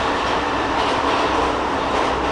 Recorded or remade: recorded